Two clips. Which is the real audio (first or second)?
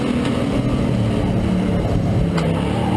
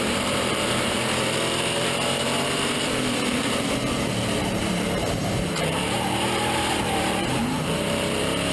first